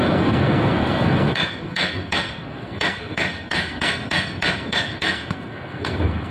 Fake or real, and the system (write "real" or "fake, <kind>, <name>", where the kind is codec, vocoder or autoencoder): fake, codec, SNAC